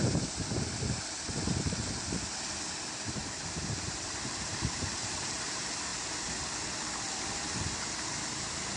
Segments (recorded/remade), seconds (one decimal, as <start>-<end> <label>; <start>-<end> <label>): 0.0-3.2 recorded; 3.2-5.4 remade; 5.4-8.8 recorded